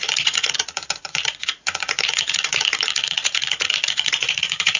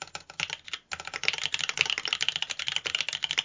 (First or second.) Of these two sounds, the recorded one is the second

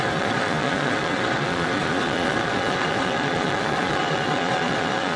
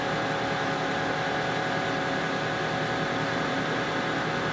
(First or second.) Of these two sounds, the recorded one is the second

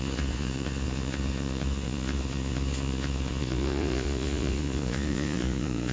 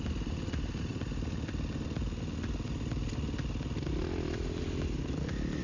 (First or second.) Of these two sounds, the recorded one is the second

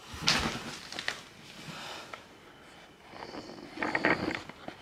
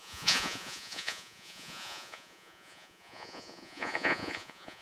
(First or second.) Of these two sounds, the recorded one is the first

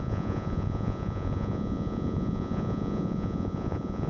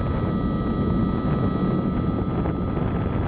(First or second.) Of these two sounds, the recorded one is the second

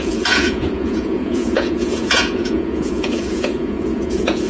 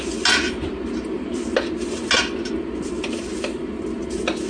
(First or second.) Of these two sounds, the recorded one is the second